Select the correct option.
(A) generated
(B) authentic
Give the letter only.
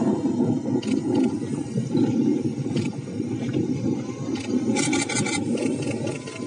B